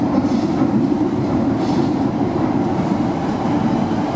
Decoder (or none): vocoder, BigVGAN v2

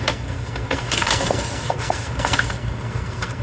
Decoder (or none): codec, SNAC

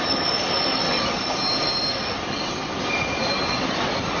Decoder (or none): none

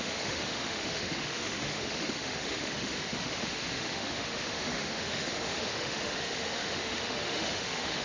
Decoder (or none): autoencoder, DAC-VAE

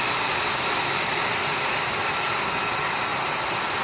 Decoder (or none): none